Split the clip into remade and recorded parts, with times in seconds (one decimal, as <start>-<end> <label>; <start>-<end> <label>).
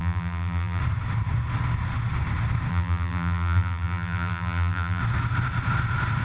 0.0-0.8 remade; 0.8-2.7 recorded; 2.7-5.0 remade; 5.0-6.2 recorded